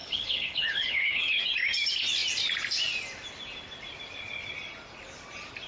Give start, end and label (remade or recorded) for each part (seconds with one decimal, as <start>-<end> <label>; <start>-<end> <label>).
0.0-1.4 remade; 1.4-5.7 recorded